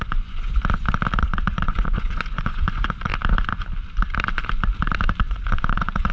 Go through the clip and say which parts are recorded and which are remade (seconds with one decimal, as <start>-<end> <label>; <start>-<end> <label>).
0.0-0.6 remade; 0.6-1.2 recorded; 1.2-3.1 remade; 3.1-5.2 recorded; 5.2-6.1 remade